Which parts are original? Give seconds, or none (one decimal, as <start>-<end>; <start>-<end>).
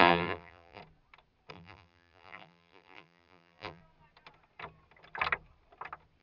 0.8-1.5; 3.8-6.2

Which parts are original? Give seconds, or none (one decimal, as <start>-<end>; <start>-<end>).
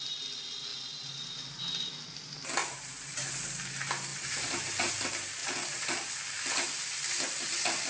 0.0-2.6; 3.3-4.1; 4.9-5.4; 6.1-7.9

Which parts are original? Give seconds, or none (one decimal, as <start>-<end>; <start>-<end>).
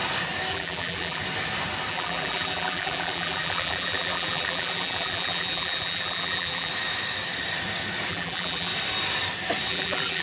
0.0-0.5; 1.2-1.9; 6.7-8.1; 8.7-9.7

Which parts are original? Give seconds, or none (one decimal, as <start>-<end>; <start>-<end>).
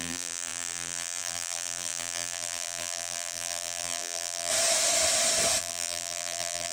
4.5-5.6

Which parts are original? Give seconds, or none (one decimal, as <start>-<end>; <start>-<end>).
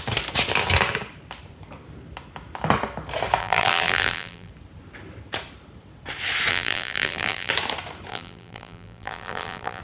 0.0-3.4; 4.5-6.5; 7.5-8.1